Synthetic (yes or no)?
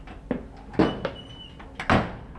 no